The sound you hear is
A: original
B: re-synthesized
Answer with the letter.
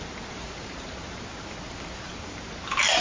A